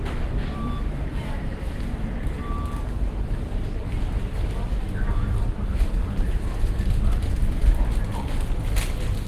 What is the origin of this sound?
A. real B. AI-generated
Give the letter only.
A